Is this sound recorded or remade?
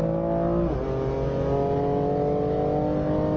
recorded